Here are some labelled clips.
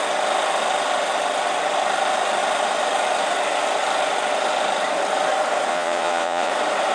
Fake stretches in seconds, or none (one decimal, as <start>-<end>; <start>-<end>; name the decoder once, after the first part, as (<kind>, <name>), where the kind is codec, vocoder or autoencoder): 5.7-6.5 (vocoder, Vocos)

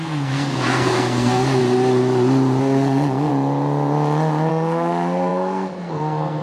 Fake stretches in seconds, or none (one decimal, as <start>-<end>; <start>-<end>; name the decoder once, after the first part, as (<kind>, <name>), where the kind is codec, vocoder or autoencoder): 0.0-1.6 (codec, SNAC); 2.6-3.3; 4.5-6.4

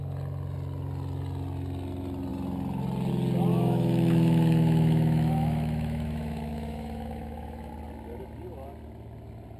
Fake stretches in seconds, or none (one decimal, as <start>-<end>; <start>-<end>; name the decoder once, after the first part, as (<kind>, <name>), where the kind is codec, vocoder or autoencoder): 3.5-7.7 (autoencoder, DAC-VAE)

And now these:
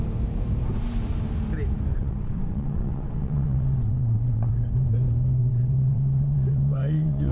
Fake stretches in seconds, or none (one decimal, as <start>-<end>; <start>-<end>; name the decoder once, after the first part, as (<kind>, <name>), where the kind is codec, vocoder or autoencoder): 1.9-4.5 (vocoder, WaveNeXt); 5.4-7.3

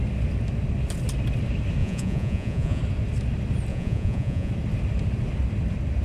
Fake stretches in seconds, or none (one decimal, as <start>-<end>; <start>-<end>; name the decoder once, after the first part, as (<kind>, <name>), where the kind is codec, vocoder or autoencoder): 1.8-2.8 (vocoder, Vocos); 3.7-4.5

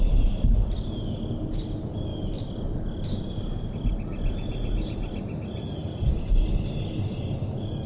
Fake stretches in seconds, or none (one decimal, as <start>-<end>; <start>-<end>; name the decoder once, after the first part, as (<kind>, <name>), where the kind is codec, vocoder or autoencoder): none

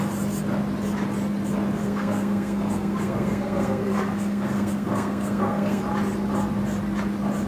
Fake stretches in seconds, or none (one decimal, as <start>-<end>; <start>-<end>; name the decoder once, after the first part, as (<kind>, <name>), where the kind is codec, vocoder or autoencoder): 1.8-5.8 (codec, SNAC)